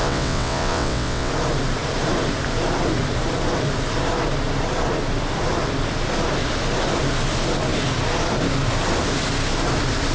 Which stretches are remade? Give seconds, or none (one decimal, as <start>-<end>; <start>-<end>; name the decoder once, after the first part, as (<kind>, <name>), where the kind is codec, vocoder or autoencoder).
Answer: 0.0-1.3 (vocoder, WaveNeXt)